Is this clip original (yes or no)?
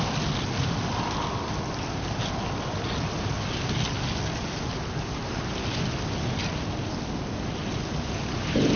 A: yes